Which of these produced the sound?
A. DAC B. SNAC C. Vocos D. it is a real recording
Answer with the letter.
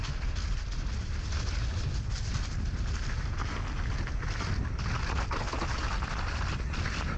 D